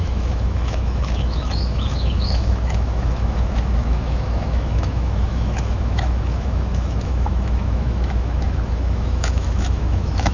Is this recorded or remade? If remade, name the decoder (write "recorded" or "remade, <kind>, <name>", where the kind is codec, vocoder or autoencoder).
remade, autoencoder, DAC-VAE